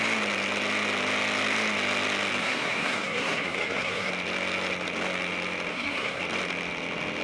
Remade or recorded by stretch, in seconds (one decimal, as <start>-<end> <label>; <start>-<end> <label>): 0.0-2.4 recorded; 2.4-4.1 remade; 4.1-5.7 recorded; 5.7-6.2 remade; 6.2-7.2 recorded